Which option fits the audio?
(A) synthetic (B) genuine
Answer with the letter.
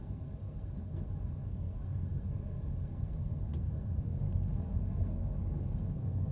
A